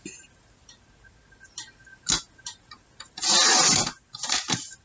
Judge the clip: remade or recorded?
recorded